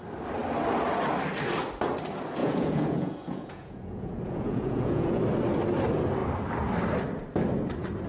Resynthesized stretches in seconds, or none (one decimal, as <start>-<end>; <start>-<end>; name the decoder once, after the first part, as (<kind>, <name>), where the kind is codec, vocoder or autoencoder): 2.4-5.2 (vocoder, Vocos)